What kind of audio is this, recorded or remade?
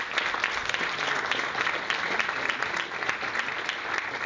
recorded